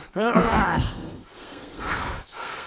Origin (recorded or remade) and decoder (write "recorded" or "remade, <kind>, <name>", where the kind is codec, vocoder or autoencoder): remade, codec, SNAC